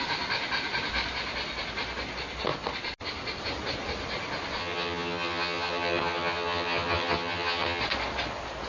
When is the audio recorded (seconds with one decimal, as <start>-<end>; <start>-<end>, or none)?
0.0-4.6; 7.8-8.7